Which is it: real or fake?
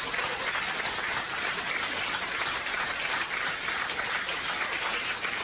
real